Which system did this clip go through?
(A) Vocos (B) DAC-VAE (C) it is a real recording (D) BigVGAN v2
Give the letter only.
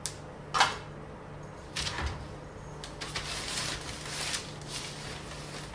C